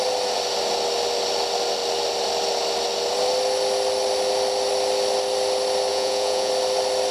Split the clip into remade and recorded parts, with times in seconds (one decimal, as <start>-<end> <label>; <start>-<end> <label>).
0.0-5.9 recorded; 5.9-6.5 remade; 6.5-7.1 recorded